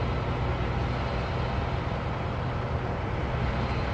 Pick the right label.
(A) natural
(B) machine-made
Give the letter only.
A